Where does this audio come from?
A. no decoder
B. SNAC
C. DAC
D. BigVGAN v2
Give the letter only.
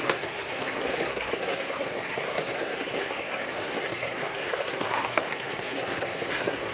B